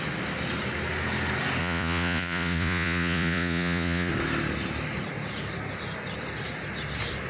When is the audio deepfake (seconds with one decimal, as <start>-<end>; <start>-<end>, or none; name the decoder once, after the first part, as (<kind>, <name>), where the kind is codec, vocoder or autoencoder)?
1.6-4.1 (vocoder, Vocos)